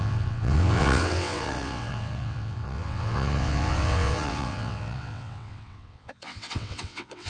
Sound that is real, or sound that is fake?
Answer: fake